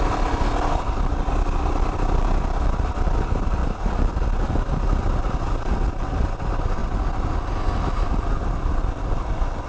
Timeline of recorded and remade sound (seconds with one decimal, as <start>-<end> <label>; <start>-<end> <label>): 0.0-9.7 recorded